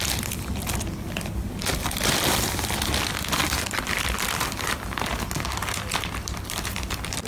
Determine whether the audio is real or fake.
fake